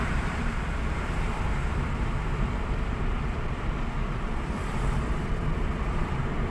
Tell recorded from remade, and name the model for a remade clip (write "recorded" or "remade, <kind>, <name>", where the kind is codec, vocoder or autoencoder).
remade, vocoder, BigVGAN v2